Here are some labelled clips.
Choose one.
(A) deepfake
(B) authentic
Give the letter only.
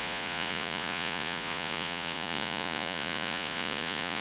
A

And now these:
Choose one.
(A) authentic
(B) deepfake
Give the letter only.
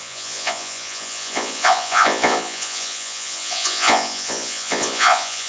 B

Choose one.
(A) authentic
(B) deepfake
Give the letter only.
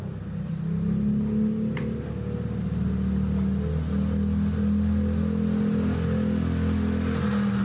A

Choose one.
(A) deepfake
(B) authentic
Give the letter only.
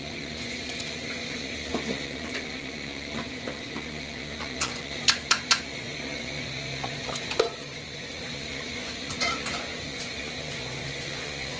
A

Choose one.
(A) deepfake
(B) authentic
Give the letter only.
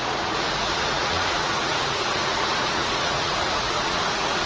A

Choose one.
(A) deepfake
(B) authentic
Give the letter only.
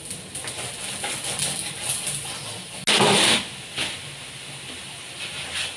B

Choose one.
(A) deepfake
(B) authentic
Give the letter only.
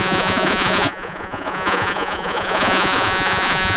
A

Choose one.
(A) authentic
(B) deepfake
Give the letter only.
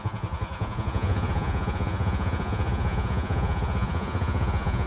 B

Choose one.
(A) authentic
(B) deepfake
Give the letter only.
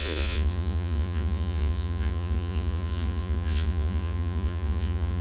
B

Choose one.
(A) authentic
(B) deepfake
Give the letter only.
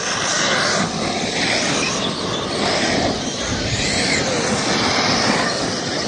A